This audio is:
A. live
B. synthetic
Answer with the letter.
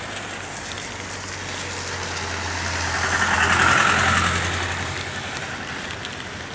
A